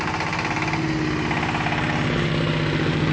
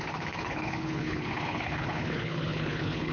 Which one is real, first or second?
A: first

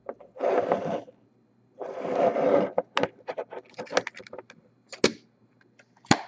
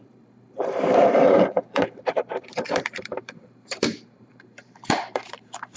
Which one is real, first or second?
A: first